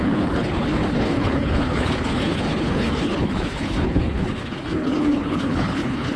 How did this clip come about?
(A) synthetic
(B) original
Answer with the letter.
A